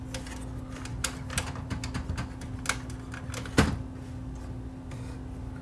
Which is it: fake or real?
real